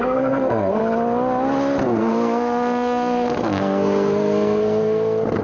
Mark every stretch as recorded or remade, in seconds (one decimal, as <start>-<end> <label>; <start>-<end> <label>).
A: 0.0-0.8 remade; 0.8-1.8 recorded; 1.8-5.4 remade